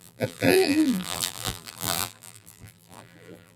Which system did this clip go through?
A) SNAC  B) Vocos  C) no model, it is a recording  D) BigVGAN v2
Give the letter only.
D